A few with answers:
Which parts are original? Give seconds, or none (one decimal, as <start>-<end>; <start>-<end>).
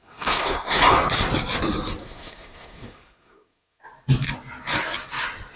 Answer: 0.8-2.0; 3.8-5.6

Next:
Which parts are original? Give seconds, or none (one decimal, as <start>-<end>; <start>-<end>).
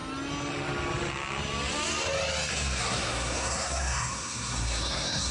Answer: 0.0-2.5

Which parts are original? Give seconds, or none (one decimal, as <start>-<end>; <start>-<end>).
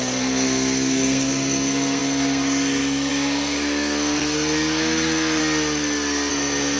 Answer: 5.4-6.3